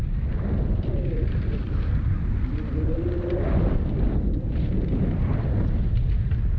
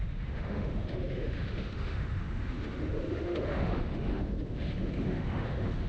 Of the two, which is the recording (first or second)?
first